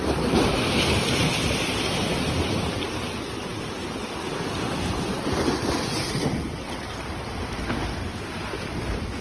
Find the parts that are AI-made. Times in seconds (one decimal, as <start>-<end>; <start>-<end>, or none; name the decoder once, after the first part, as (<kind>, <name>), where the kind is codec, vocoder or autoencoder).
none

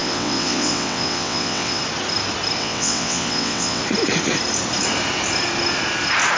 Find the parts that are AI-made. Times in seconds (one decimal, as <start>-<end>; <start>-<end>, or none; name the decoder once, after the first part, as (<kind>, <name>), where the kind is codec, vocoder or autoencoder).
0.0-1.8 (vocoder, WaveNeXt); 2.6-3.8

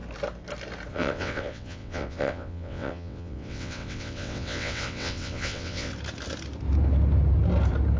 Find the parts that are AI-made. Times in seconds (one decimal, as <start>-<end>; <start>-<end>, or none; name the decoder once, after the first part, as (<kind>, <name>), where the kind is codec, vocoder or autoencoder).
0.9-5.9 (vocoder, WaveNeXt)

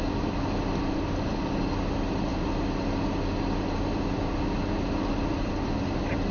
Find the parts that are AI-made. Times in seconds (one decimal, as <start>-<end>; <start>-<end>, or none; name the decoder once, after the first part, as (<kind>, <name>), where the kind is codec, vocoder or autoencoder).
none

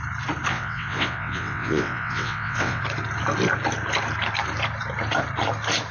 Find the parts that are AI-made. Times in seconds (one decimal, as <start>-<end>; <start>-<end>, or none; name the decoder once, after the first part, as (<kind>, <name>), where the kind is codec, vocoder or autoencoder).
0.5-2.8 (vocoder, WaveNeXt)